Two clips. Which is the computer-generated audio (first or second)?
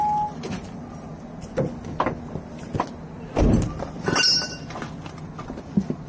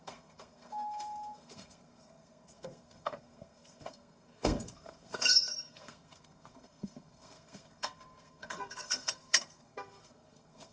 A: second